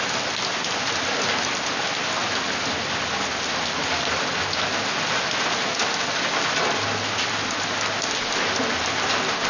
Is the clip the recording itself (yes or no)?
yes